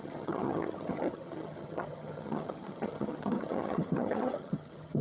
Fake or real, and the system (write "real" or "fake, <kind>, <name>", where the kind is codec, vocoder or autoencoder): fake, vocoder, HiFi-GAN